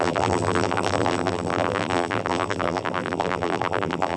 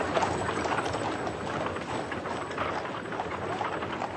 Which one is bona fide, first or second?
second